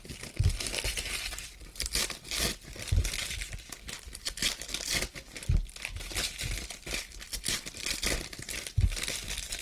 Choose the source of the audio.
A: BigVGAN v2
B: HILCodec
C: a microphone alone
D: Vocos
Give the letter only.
C